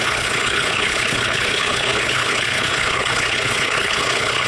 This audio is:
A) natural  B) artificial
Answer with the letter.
B